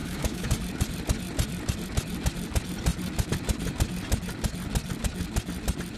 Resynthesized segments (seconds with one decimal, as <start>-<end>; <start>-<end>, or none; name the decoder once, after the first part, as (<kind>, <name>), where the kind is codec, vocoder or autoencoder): 0.0-0.5 (autoencoder, DAC-VAE)